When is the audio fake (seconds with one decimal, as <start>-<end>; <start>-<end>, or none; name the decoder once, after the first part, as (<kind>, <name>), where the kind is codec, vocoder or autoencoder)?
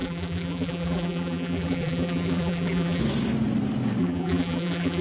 0.0-3.0 (vocoder, BigVGAN v2); 4.0-5.0